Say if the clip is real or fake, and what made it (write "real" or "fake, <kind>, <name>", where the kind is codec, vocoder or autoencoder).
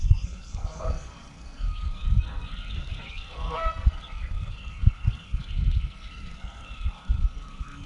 fake, codec, SNAC